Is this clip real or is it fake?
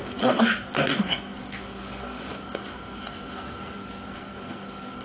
fake